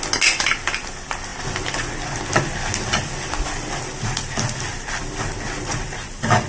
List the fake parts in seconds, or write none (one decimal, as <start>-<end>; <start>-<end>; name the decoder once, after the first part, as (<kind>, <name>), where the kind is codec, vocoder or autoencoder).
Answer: none